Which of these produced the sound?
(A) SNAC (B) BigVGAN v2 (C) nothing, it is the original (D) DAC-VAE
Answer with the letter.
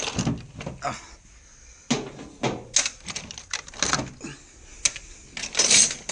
C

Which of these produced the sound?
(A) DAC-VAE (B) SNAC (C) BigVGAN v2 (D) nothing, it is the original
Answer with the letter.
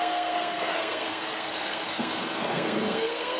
B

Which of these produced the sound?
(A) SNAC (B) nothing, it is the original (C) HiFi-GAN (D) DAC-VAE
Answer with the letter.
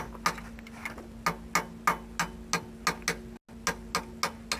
B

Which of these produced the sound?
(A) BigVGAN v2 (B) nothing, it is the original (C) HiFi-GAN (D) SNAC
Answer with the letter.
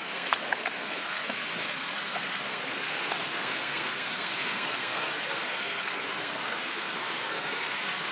D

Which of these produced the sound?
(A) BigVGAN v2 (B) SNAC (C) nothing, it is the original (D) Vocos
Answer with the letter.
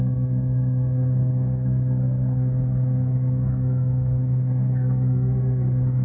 B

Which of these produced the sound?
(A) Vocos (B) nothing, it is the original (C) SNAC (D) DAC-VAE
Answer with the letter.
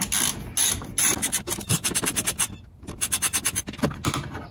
B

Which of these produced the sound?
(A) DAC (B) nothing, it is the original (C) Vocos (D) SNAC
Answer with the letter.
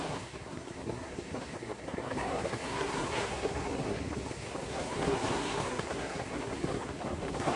D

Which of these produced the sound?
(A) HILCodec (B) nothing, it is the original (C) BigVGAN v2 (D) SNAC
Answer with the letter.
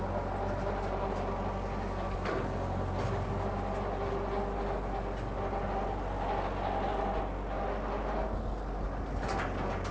B